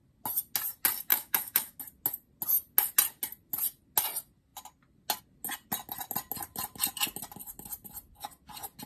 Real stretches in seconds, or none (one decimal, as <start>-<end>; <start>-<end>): 0.0-1.1; 1.8-8.9